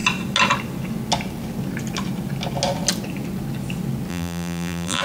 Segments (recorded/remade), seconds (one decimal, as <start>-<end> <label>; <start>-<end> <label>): 0.0-4.1 recorded; 4.1-5.0 remade